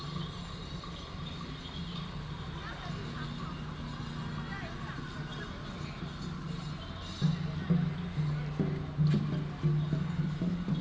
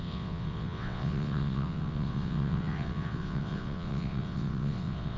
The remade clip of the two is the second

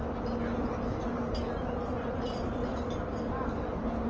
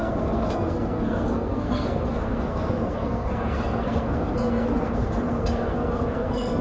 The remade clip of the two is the second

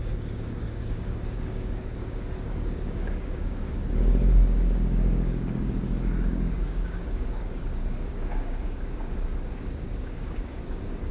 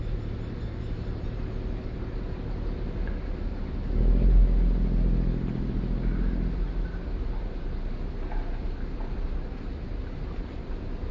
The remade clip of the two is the first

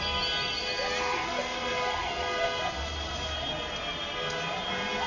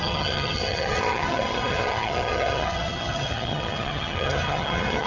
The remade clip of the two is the second